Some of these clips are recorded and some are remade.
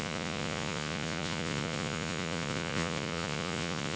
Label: remade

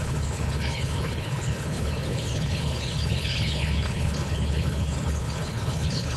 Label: remade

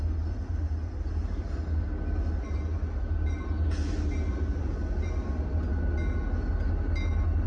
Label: recorded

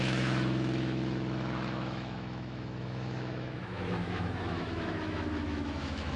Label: remade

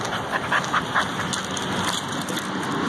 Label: recorded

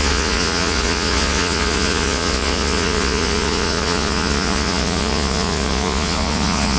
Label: remade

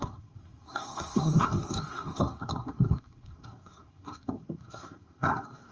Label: remade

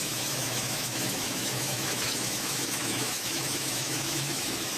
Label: remade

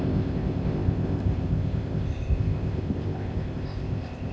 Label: remade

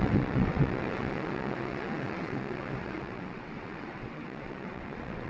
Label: remade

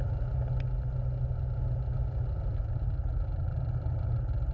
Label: recorded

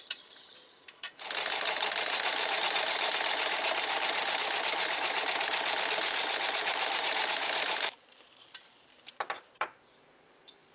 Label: remade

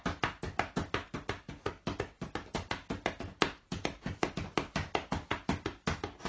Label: recorded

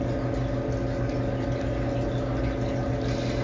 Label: recorded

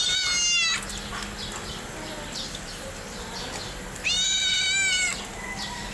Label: recorded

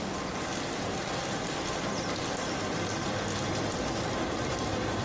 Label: recorded